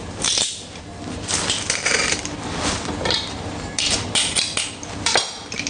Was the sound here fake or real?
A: fake